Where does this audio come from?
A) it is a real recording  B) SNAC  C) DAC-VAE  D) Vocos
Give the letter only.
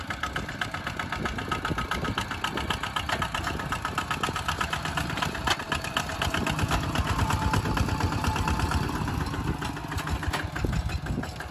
A